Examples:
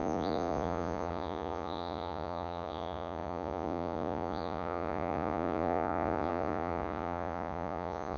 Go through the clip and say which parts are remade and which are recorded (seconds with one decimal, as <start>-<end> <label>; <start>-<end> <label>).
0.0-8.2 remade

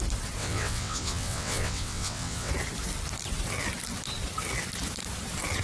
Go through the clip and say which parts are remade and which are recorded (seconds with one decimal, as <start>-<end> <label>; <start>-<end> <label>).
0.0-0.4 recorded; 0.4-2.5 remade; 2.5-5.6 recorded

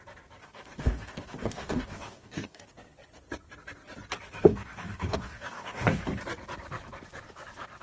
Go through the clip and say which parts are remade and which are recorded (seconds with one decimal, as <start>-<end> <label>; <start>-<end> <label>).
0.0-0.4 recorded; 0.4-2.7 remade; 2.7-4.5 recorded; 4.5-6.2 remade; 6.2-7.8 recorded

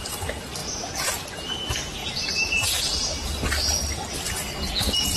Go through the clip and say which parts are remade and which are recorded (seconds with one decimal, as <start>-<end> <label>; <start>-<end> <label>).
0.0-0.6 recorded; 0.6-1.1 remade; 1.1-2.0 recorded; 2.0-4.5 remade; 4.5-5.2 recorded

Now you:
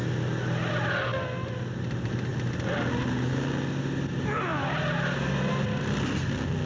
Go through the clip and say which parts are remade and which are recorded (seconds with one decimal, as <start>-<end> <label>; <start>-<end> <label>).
0.0-6.7 recorded